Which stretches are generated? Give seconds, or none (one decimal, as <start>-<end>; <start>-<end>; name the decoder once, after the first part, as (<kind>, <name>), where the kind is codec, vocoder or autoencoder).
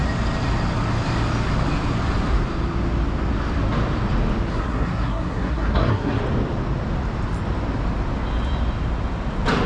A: 4.5-6.2 (codec, SNAC)